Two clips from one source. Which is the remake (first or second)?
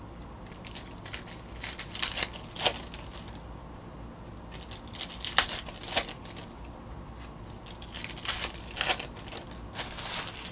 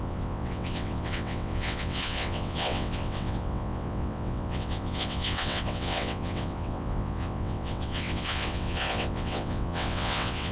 second